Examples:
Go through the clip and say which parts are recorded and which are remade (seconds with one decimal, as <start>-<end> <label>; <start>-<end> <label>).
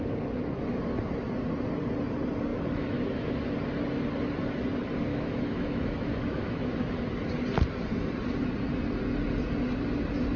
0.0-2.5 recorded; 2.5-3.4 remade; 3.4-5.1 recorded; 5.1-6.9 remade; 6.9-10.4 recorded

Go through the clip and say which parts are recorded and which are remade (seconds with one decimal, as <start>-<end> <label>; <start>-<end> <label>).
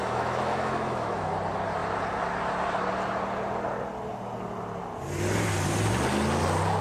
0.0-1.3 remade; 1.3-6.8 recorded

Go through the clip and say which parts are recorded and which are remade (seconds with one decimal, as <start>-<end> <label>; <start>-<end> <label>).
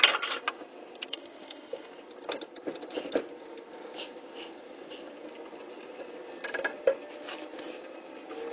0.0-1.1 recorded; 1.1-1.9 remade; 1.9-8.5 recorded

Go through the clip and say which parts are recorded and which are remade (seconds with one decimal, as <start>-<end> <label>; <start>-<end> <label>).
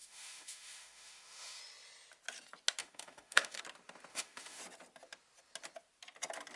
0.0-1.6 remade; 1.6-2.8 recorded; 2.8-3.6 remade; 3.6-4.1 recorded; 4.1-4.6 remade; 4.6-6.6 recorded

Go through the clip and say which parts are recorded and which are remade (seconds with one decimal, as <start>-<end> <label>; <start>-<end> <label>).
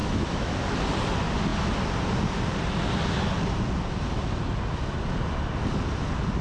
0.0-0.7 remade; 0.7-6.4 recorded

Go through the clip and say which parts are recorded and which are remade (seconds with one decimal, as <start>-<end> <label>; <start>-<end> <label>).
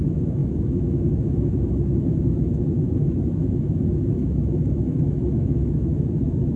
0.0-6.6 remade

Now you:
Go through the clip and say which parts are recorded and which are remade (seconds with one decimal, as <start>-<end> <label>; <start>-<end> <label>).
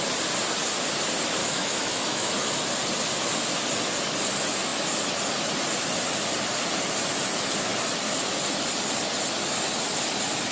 0.0-1.4 recorded; 1.4-2.3 remade; 2.3-10.5 recorded